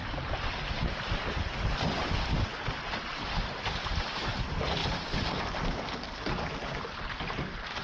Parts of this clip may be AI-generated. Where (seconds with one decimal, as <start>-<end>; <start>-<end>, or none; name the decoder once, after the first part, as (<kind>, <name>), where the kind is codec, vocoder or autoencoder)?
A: none